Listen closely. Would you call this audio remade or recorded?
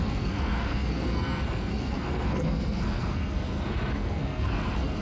remade